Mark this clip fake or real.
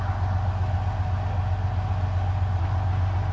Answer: real